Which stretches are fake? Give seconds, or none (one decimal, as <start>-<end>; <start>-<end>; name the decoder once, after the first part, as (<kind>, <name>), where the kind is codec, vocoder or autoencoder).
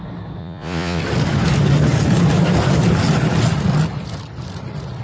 0.4-1.0 (vocoder, Vocos)